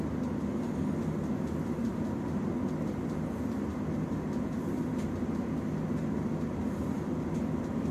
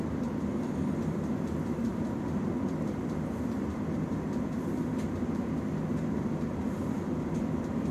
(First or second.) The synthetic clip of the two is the second